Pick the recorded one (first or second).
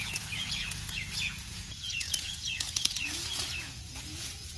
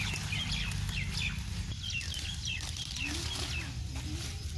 second